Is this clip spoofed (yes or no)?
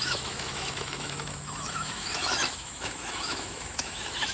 yes